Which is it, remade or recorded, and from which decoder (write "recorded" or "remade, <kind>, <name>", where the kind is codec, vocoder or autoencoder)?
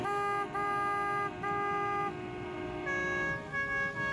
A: recorded